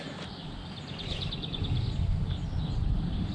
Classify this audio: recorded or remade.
recorded